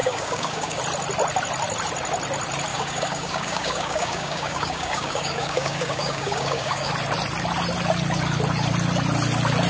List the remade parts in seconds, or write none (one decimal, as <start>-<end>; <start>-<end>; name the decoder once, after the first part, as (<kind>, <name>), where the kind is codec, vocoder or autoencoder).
0.0-0.8 (codec, DAC); 2.7-6.9